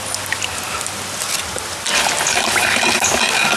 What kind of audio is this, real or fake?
real